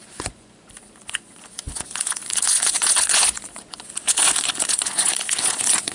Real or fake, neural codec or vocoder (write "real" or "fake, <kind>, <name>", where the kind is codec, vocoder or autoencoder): fake, vocoder, Vocos